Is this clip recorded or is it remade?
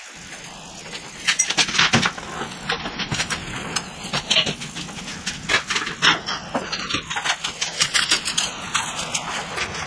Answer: recorded